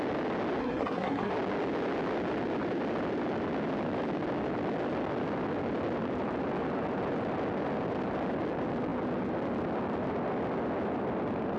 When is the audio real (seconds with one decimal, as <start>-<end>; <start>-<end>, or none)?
0.0-0.6; 1.3-11.6